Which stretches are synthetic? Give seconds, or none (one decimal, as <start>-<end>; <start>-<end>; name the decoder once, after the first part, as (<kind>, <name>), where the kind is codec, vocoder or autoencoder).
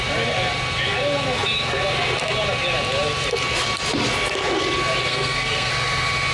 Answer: 5.1-5.7 (codec, SNAC)